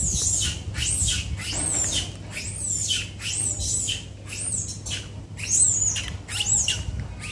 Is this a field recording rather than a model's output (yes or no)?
yes